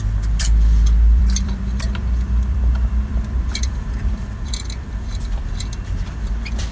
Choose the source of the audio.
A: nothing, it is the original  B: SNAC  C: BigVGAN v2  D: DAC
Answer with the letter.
C